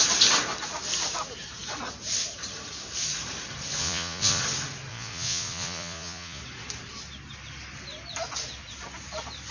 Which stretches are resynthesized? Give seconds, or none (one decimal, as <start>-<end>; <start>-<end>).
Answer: 3.8-4.4; 4.9-6.4